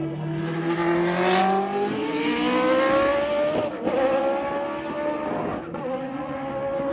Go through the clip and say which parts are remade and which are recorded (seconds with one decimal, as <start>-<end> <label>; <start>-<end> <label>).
0.0-5.5 recorded; 5.5-6.4 remade; 6.4-6.9 recorded